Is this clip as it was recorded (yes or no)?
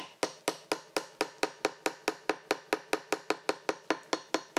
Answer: yes